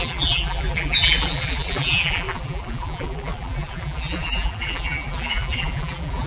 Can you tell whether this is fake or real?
fake